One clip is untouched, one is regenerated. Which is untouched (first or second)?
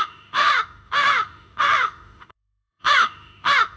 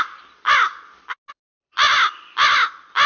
second